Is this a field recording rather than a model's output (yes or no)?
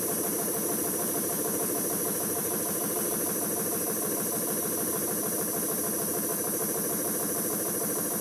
no